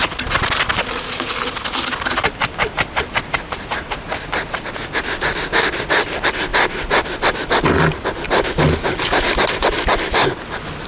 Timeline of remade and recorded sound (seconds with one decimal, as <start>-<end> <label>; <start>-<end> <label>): 0.0-10.9 recorded